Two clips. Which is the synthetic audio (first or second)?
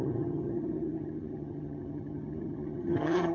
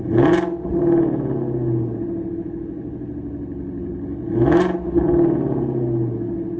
first